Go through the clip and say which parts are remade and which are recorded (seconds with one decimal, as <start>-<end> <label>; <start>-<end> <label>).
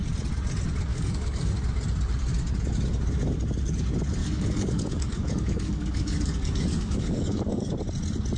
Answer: 0.0-0.9 recorded; 0.9-1.5 remade; 1.5-4.2 recorded; 4.2-7.7 remade; 7.7-8.4 recorded